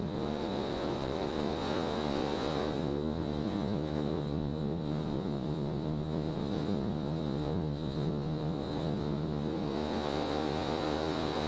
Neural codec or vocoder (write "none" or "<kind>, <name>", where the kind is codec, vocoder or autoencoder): vocoder, Vocos